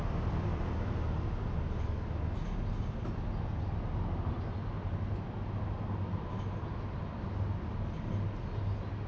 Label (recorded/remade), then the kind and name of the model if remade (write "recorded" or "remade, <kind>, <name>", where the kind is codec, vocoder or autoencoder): recorded